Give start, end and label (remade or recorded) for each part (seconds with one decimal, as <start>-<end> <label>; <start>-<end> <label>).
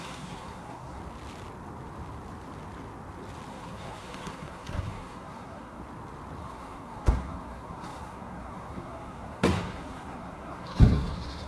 0.0-1.0 remade; 1.0-3.5 recorded; 3.5-5.8 remade; 5.8-6.4 recorded; 6.4-11.5 remade